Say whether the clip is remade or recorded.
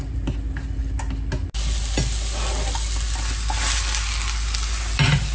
recorded